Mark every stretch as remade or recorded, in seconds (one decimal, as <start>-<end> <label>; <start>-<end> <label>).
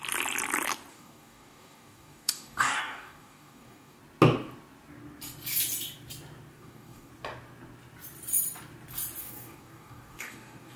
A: 0.0-0.9 recorded; 0.9-4.0 remade; 4.0-6.5 recorded; 6.5-7.1 remade; 7.1-9.2 recorded; 9.2-10.8 remade